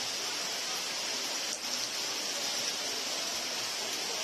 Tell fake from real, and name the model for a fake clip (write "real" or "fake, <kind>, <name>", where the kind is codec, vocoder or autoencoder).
real